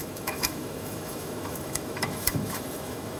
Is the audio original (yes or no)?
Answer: no